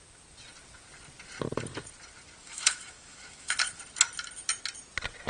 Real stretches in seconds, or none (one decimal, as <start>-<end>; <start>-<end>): 0.0-2.4; 3.8-5.3